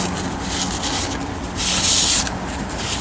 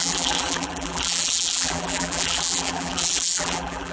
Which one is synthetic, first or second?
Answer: second